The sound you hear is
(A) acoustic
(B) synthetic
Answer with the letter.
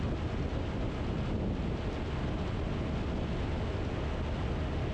A